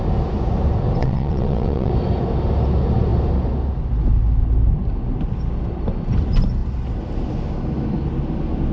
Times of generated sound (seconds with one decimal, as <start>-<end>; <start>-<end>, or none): 1.0-1.9